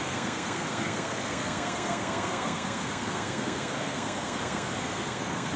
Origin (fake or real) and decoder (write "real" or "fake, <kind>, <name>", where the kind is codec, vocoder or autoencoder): fake, codec, SNAC